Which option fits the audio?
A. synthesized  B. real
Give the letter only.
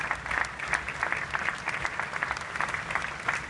B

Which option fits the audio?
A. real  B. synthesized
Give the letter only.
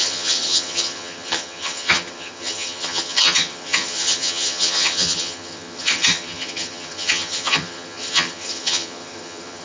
B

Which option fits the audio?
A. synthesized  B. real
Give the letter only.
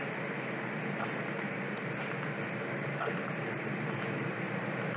A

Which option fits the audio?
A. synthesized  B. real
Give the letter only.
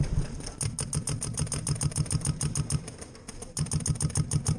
B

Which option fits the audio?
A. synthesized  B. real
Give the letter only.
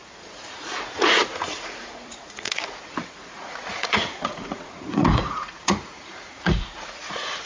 A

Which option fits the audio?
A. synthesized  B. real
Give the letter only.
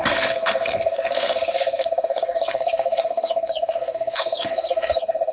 A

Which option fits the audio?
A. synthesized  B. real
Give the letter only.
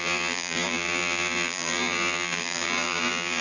A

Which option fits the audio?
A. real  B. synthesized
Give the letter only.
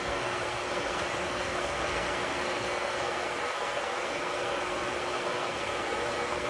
B